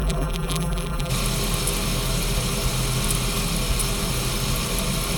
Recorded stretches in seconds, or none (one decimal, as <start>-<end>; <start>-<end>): 1.1-5.2